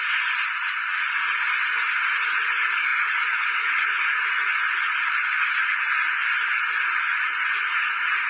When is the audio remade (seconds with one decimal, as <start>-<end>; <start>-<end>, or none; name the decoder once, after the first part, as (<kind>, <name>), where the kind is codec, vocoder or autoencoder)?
2.9-4.6 (vocoder, Vocos)